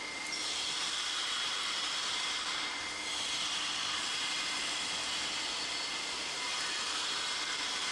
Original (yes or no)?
no